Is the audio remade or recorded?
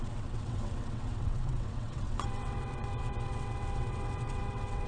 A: remade